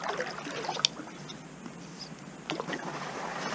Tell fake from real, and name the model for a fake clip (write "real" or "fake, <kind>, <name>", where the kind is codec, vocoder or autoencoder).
real